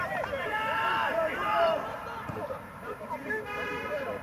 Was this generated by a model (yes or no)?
yes